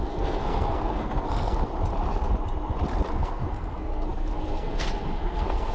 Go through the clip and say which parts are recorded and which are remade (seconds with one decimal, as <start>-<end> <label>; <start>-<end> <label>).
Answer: 0.0-1.7 remade; 1.7-3.1 recorded; 3.1-5.7 remade

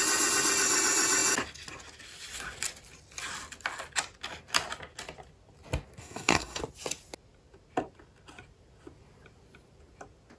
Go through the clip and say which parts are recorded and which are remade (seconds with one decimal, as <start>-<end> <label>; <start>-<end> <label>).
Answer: 0.0-6.0 recorded; 6.0-6.6 remade; 6.6-10.4 recorded

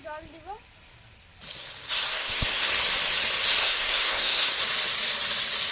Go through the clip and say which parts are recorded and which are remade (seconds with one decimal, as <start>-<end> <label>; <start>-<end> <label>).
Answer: 0.0-2.1 recorded; 2.1-2.7 remade; 2.7-3.6 recorded; 3.6-4.6 remade; 4.6-5.7 recorded

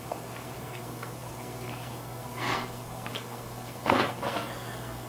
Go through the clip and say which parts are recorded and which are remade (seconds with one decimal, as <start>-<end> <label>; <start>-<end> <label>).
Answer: 0.0-5.1 remade

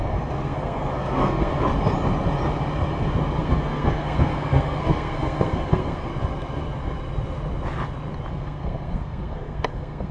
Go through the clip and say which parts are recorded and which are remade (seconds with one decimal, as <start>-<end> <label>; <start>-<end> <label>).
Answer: 0.0-1.5 remade; 1.5-3.4 recorded; 3.4-6.1 remade; 6.1-8.3 recorded; 8.3-10.1 remade

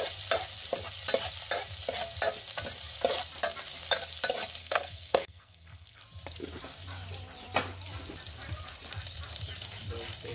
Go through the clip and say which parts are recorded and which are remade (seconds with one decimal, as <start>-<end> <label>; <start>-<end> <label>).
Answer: 0.0-4.6 recorded; 4.6-6.0 remade; 6.0-10.3 recorded

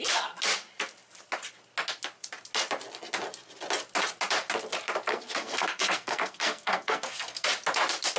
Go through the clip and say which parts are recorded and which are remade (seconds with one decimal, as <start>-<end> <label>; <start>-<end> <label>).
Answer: 0.0-5.1 recorded; 5.1-7.5 remade; 7.5-8.2 recorded